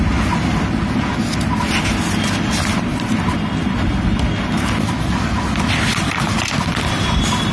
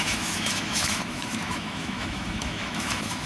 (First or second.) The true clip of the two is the first